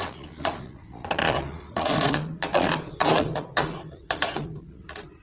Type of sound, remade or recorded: remade